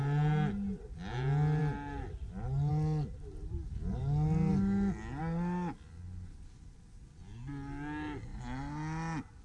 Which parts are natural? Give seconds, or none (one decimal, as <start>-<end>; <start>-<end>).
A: 0.0-9.4